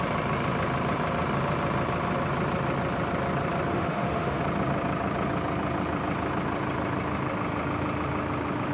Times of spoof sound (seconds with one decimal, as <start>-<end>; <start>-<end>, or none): 3.7-4.4